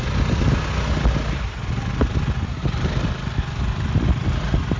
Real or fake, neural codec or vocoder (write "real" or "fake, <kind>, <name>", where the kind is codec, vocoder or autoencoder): real